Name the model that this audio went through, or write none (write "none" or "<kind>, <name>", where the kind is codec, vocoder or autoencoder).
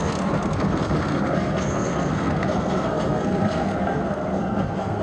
codec, SNAC